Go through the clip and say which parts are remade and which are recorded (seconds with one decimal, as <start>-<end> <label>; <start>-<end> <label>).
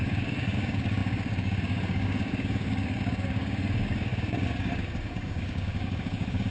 0.0-6.5 remade